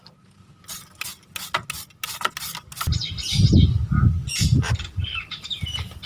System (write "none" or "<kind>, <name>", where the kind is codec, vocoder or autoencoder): none